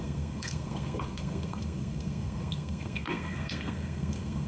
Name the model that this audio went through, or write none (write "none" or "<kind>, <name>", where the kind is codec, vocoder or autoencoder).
codec, SNAC